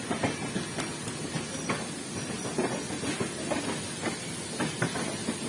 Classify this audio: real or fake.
real